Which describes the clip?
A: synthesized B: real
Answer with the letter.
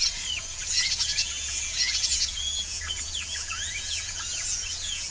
A